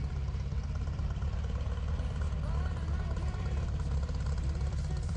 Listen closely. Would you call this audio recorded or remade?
remade